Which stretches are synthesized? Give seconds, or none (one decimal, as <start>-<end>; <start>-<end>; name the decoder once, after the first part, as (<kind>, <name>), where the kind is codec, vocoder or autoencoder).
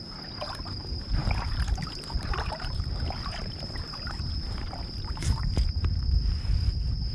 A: 1.2-4.3 (vocoder, BigVGAN v2); 4.8-6.2